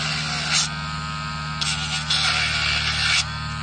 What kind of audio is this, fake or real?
real